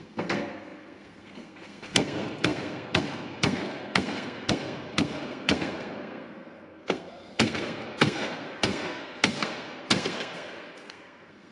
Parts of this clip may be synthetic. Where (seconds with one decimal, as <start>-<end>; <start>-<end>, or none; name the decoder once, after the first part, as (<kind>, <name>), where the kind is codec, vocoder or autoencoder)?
0.0-11.5 (codec, SNAC)